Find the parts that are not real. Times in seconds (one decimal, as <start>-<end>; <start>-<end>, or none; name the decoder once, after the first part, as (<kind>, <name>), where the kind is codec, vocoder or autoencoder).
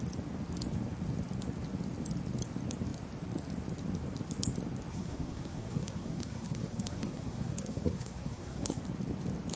4.9-8.8 (codec, SNAC)